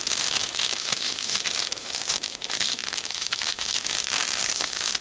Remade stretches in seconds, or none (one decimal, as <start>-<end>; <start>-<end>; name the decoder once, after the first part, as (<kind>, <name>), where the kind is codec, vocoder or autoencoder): 0.0-5.0 (autoencoder, DAC-VAE)